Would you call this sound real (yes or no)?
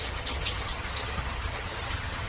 no